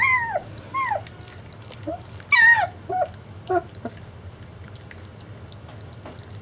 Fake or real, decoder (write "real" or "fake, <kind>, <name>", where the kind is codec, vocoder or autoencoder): real